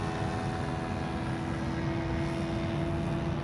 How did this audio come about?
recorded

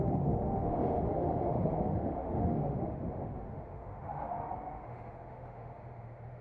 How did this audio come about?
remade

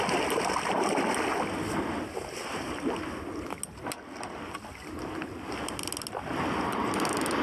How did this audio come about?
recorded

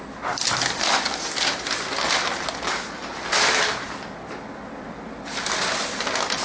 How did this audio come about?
recorded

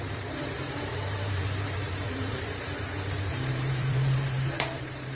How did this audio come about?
remade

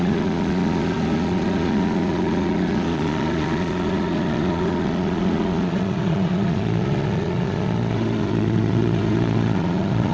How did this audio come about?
remade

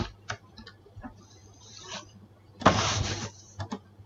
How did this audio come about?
remade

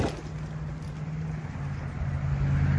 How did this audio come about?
recorded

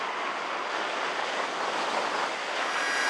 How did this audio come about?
recorded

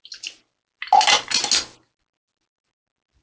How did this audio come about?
recorded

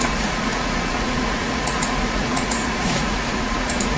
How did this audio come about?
remade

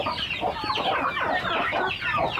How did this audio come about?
recorded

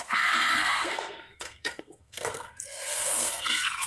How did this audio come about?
remade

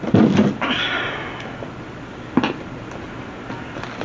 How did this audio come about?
recorded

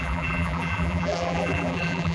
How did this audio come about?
remade